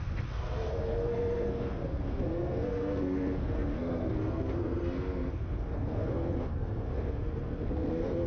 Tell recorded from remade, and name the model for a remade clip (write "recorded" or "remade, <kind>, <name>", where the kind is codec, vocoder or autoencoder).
remade, codec, SNAC